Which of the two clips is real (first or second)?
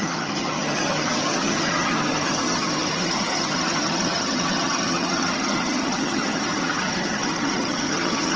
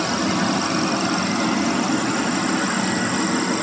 second